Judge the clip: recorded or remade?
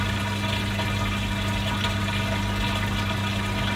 recorded